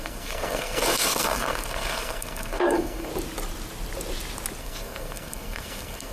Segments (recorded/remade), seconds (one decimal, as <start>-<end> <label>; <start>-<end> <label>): 0.0-3.1 remade; 3.1-4.6 recorded; 4.6-6.1 remade